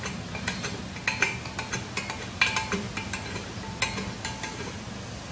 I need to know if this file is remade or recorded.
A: recorded